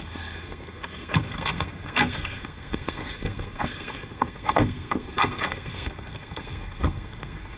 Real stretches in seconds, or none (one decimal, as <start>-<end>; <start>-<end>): none